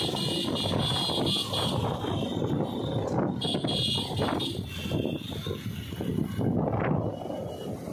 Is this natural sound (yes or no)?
yes